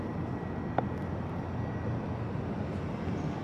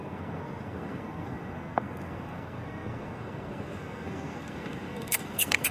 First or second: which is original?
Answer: first